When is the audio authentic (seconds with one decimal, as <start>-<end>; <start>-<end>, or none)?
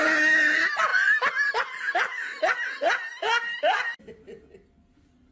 0.0-5.3